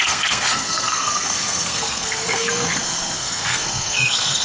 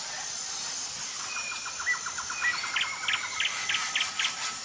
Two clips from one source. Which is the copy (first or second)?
first